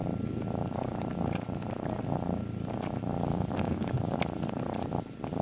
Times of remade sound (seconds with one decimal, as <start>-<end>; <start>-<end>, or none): 3.3-4.2